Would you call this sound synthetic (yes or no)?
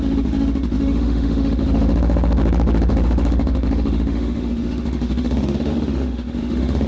yes